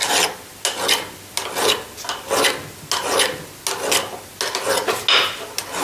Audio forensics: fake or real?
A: real